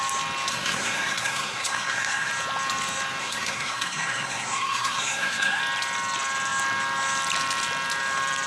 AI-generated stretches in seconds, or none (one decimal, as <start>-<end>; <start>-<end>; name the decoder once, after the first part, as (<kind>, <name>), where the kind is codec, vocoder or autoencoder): 0.5-2.3 (codec, SNAC); 3.2-5.6